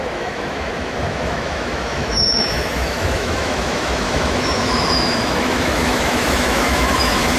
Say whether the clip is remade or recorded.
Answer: remade